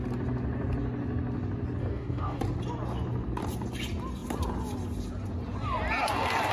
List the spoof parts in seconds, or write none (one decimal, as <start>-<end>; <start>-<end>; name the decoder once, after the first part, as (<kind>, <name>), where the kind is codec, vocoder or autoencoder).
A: 1.8-2.4 (codec, DAC)